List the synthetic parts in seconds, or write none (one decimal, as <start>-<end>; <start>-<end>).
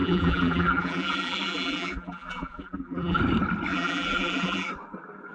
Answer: 0.0-3.2; 3.7-4.7